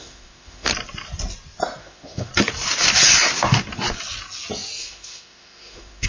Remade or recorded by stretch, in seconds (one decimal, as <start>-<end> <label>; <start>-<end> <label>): 0.0-0.7 remade; 0.7-1.8 recorded; 1.8-2.3 remade; 2.3-4.8 recorded; 4.8-6.1 remade